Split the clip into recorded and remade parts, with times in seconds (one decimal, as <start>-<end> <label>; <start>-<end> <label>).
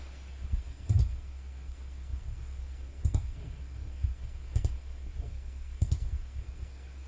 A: 0.0-7.1 remade